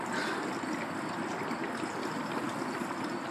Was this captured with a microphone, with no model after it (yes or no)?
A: yes